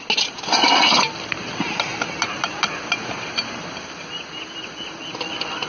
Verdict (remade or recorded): recorded